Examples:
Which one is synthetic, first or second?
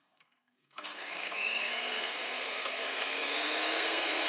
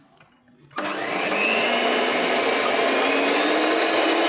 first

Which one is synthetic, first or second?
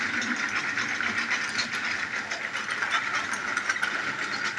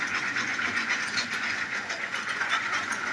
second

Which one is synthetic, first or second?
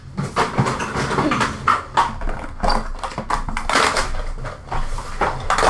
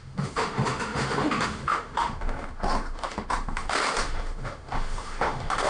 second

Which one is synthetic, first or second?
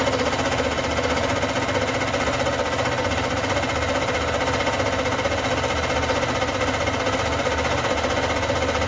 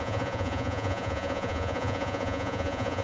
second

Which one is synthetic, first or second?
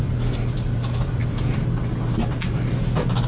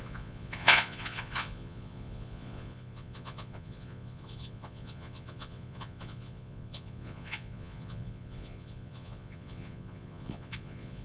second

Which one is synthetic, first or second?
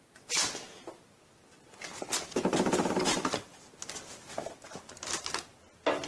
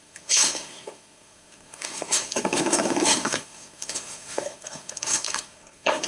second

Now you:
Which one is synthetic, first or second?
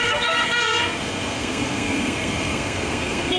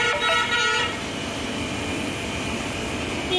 first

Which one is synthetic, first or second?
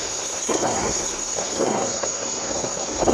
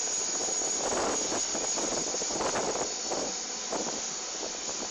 first